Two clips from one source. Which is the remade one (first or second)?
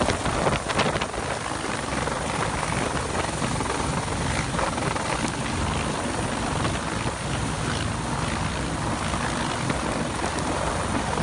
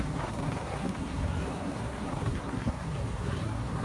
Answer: second